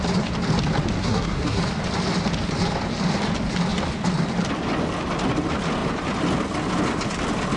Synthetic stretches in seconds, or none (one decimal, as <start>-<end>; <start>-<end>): 1.0-1.6